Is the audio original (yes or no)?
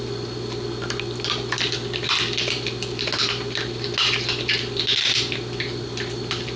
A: yes